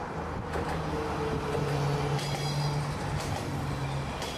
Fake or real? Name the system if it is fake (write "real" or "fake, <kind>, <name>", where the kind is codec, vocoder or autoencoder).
real